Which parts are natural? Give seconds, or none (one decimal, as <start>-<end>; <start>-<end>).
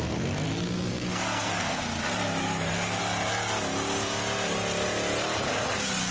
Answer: 0.0-0.9; 1.8-2.4; 3.0-6.1